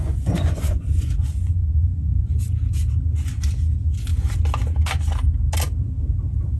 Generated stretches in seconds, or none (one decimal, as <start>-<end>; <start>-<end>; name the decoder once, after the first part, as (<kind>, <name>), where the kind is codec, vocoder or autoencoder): 0.0-2.3 (vocoder, Vocos)